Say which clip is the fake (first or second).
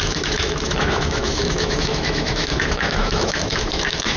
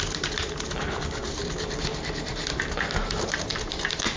first